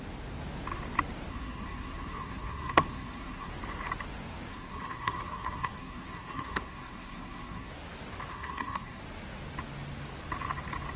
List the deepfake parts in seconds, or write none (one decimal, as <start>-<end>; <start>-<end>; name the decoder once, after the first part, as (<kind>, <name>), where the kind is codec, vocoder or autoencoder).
1.3-3.5 (codec, SNAC); 4.5-7.7; 8.3-9.0